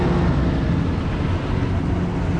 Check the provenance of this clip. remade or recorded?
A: recorded